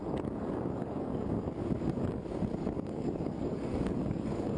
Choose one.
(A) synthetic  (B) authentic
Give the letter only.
A